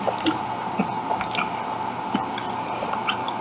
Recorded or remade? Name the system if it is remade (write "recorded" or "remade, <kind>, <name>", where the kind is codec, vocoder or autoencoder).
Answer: recorded